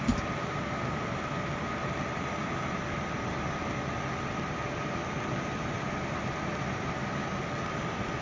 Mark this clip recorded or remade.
recorded